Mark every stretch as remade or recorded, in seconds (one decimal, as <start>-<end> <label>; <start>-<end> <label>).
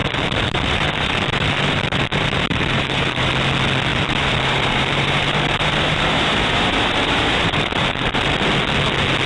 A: 0.0-3.3 remade; 3.3-3.9 recorded; 3.9-8.2 remade; 8.2-9.3 recorded